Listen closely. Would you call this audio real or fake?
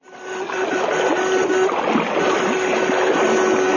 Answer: real